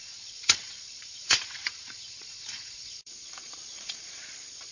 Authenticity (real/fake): fake